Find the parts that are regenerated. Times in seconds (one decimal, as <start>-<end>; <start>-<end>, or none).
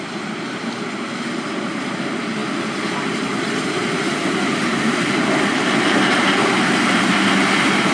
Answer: 4.2-6.9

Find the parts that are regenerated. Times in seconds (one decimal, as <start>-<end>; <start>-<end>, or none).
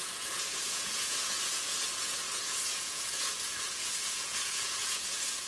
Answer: 0.0-5.5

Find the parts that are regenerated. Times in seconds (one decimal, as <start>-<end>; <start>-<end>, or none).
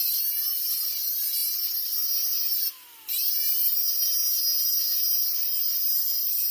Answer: none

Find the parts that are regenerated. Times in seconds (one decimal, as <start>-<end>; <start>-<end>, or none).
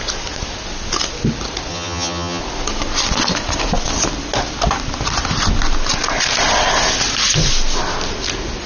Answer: 1.7-2.4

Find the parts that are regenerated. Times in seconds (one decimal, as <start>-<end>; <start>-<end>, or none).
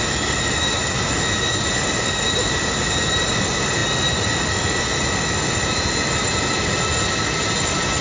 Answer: none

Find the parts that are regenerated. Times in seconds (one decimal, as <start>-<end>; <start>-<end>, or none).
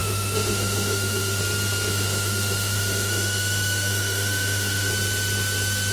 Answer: 0.0-1.4; 1.9-4.9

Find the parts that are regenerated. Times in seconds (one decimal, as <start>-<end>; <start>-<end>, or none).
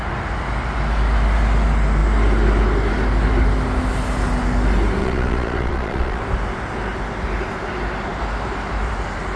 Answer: 5.0-6.2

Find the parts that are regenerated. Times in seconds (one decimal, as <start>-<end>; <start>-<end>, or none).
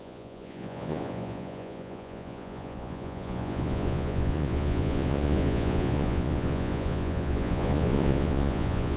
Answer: 0.0-9.0